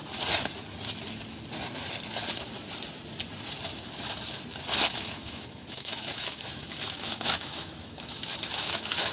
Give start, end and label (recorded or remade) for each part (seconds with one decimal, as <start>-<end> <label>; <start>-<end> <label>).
0.0-4.9 recorded; 4.9-9.1 remade